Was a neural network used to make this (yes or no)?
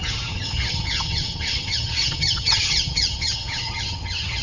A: yes